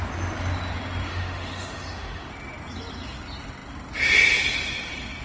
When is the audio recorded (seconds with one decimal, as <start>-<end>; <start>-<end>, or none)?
0.0-1.1; 2.3-5.2